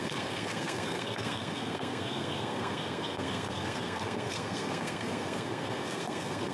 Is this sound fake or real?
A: fake